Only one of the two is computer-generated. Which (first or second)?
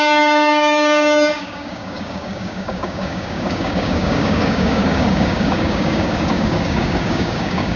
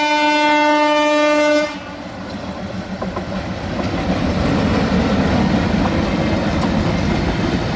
first